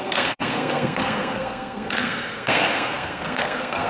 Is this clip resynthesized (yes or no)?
yes